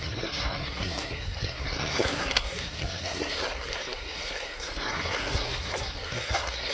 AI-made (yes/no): yes